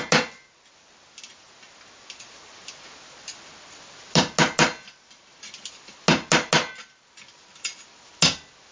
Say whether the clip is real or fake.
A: real